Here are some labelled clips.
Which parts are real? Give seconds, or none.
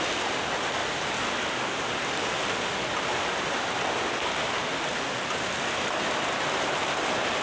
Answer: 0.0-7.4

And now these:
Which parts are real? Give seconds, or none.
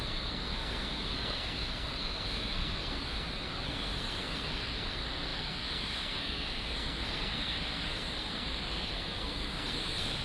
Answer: none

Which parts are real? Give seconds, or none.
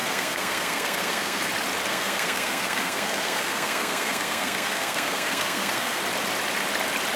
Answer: 1.5-1.9; 6.0-7.2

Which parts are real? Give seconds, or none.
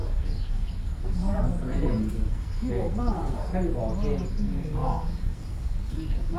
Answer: 3.5-4.3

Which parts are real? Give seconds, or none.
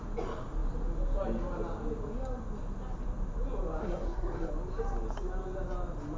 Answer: 0.0-3.8; 4.5-6.2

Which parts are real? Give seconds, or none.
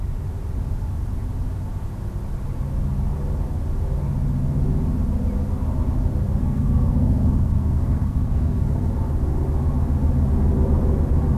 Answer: 0.0-6.4; 8.9-11.4